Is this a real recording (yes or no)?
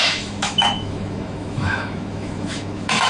no